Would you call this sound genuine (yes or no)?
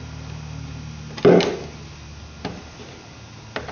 yes